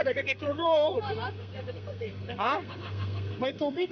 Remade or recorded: remade